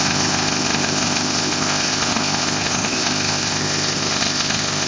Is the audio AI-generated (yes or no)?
yes